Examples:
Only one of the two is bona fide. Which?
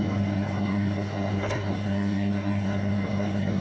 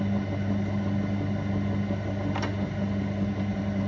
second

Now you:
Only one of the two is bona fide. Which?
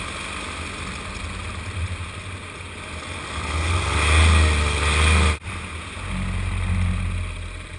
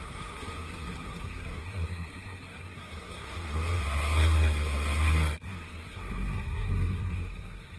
first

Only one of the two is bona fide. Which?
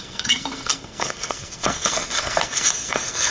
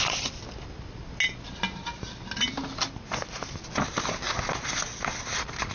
second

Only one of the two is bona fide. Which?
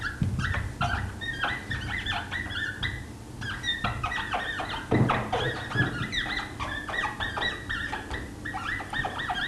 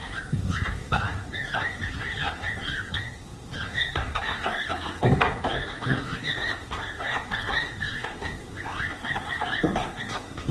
first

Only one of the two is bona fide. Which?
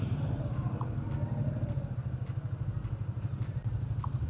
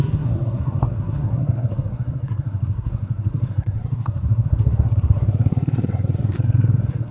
first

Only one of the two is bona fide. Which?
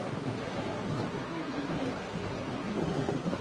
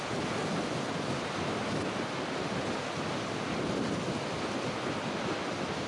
second